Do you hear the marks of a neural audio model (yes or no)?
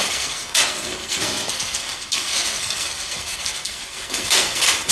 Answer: yes